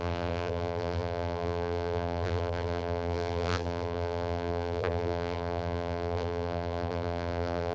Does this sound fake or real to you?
fake